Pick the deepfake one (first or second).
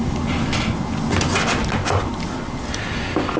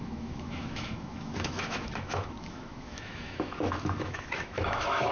second